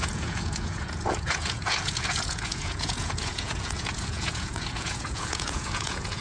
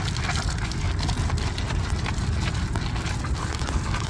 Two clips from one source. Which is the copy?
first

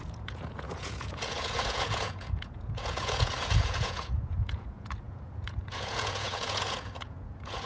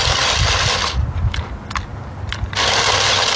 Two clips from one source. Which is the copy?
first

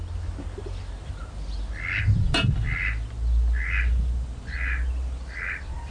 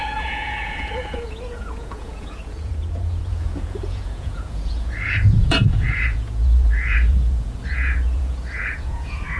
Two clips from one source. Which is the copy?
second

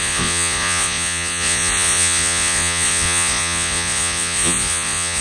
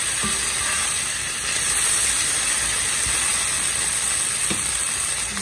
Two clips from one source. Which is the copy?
first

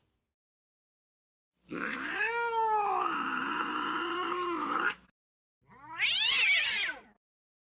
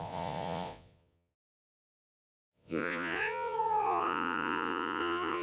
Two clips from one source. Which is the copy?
second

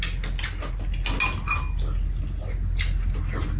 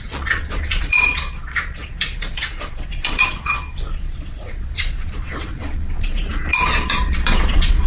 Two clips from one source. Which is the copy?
second